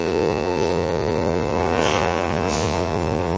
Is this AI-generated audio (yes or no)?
yes